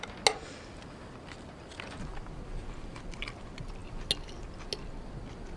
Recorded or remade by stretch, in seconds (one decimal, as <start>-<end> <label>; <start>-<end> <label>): 0.0-5.6 recorded